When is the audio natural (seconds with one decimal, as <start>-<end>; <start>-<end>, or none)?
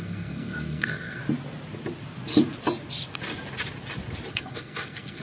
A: 1.2-4.3